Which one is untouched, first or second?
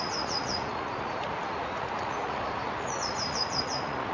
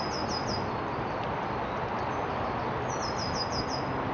second